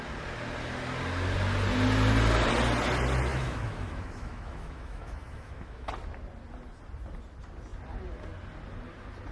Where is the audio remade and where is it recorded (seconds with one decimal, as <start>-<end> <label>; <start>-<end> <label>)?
0.0-3.3 recorded; 3.3-5.9 remade; 5.9-9.3 recorded